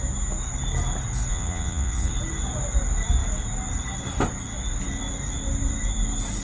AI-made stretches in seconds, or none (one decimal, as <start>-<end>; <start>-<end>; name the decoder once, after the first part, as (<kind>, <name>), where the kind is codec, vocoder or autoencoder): 1.3-2.1 (vocoder, Vocos)

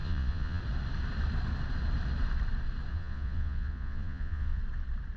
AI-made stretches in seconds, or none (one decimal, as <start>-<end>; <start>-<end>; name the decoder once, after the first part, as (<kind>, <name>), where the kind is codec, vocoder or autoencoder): 0.0-0.6 (vocoder, Vocos); 2.9-4.6

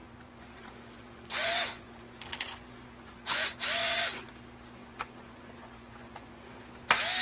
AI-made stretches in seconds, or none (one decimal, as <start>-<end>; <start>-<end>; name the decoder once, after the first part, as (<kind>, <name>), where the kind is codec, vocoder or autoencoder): 0.0-4.3 (vocoder, Vocos); 4.8-6.6

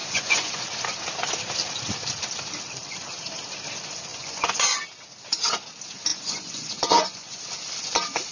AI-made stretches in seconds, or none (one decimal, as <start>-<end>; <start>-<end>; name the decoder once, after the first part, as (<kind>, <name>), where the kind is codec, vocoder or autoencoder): 0.0-0.6 (vocoder, Vocos); 4.1-4.8; 6.1-7.4

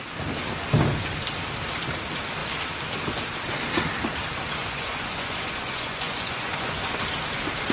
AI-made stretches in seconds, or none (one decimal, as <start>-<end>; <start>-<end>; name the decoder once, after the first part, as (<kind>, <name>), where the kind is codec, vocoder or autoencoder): 4.6-7.0 (vocoder, Vocos)

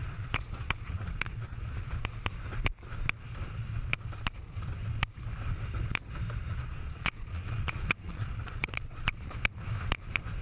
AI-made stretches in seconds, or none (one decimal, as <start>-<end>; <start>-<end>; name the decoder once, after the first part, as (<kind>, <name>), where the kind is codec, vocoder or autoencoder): 0.0-2.0 (vocoder, Vocos); 6.5-9.2

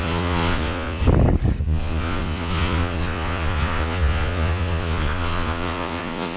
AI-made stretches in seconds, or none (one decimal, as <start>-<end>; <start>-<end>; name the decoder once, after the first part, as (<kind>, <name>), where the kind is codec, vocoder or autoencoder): 0.0-1.0 (vocoder, Vocos); 1.6-6.4

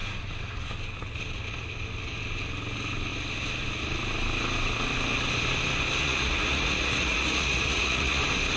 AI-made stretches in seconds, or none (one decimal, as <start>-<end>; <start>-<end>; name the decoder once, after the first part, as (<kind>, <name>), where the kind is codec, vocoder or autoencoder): 6.0-8.2 (vocoder, Vocos)